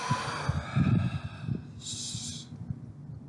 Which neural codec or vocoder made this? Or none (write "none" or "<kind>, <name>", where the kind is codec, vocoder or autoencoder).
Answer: none